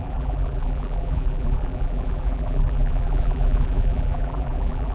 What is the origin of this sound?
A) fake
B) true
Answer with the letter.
A